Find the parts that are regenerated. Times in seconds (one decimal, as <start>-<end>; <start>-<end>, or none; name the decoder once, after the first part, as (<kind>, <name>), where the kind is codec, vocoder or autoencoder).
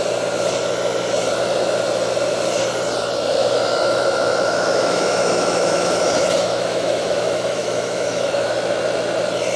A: 3.4-8.5 (autoencoder, DAC-VAE)